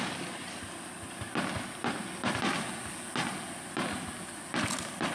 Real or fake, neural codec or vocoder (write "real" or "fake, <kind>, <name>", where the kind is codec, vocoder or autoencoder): real